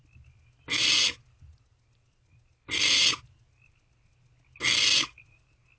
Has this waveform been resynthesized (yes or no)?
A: no